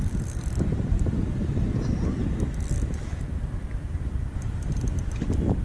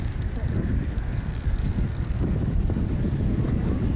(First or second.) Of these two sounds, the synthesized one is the second